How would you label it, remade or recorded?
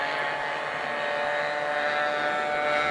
recorded